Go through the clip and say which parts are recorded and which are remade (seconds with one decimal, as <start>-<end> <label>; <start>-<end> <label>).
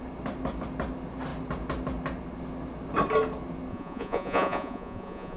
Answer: 0.0-3.7 recorded; 3.7-5.4 remade